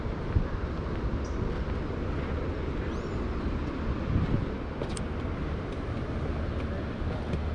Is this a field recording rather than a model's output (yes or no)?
yes